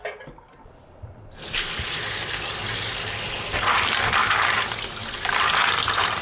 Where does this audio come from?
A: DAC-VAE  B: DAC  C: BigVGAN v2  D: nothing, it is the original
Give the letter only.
D